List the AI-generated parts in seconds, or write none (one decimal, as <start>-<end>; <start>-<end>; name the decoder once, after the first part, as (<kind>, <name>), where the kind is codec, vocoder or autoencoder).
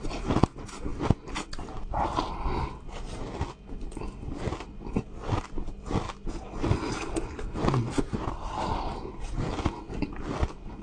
none